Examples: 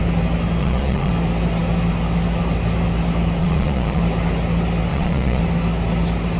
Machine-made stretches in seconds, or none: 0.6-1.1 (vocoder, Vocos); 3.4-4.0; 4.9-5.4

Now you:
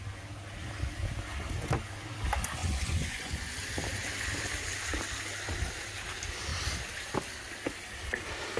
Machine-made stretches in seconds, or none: 2.6-3.5 (vocoder, Vocos)

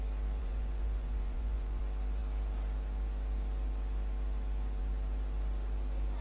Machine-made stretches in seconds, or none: 0.4-1.8 (vocoder, Vocos)

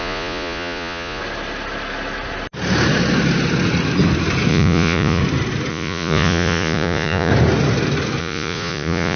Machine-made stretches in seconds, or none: 0.0-1.2 (vocoder, Vocos); 4.5-5.2; 5.7-7.3; 8.2-9.2

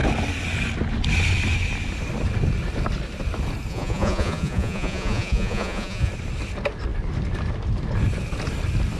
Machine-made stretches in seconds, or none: 3.7-6.1 (vocoder, Vocos)

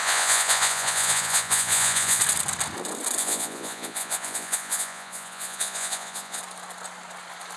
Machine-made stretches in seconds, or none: 0.0-2.2 (vocoder, Vocos); 3.2-6.4

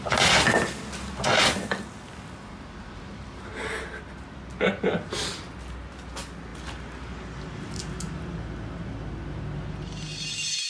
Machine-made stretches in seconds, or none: none